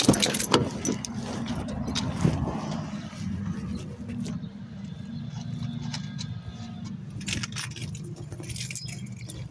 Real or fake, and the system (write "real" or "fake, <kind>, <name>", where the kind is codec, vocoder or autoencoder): real